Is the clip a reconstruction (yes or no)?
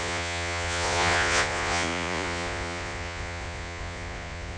yes